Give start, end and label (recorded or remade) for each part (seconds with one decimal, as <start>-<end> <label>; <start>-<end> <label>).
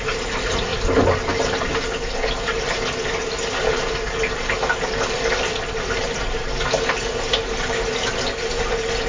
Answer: 0.0-9.1 recorded